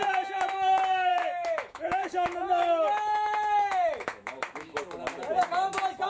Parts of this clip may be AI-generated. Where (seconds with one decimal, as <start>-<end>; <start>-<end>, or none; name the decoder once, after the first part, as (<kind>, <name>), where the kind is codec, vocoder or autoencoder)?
1.1-4.8 (autoencoder, DAC-VAE)